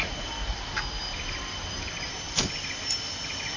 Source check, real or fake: real